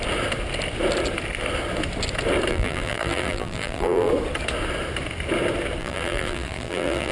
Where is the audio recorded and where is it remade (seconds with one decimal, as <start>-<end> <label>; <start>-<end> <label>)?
0.0-2.5 recorded; 2.5-4.1 remade; 4.1-5.8 recorded; 5.8-7.1 remade